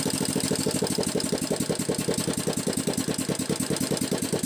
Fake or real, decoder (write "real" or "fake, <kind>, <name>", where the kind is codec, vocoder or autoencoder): real